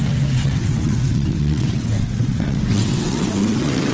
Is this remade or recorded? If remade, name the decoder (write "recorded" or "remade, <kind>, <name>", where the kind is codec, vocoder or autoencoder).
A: remade, vocoder, WaveNeXt